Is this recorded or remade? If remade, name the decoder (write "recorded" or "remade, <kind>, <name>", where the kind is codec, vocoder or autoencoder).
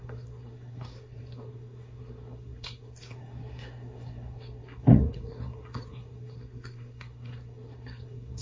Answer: remade, codec, SNAC